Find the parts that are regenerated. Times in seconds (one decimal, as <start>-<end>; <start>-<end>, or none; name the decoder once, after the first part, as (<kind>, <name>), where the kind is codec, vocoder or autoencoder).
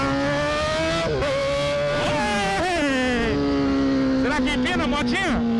none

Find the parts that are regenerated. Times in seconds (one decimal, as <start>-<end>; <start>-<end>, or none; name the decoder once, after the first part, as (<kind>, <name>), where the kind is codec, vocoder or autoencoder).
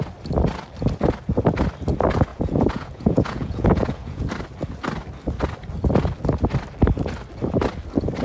2.3-4.3 (vocoder, Vocos)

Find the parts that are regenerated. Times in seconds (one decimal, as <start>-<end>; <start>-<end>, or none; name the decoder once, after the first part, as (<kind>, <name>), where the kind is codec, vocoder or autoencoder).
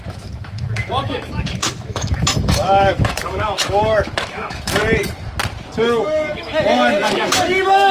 0.0-4.8 (autoencoder, DAC-VAE); 5.8-7.9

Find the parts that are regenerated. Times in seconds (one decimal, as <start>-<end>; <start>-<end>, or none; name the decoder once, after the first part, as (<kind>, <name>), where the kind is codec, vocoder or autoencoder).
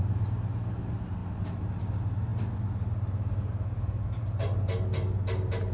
none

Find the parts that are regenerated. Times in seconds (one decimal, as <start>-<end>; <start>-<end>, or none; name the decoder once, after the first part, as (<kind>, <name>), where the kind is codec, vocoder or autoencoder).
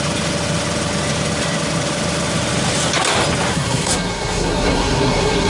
3.5-5.5 (codec, SNAC)